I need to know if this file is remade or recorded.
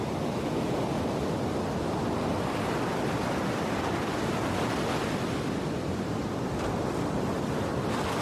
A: recorded